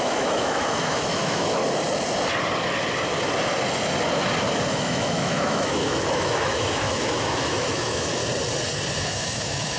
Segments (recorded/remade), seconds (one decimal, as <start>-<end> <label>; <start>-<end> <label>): 0.0-1.6 remade; 1.6-4.7 recorded; 4.7-8.2 remade; 8.2-9.0 recorded; 9.0-9.8 remade